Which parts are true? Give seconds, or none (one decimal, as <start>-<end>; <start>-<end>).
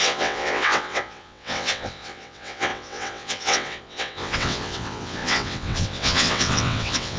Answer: none